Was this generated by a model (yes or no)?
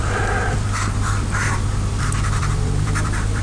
yes